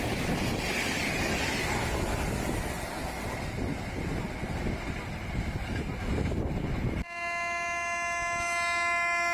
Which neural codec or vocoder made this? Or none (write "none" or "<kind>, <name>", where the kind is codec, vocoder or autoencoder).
none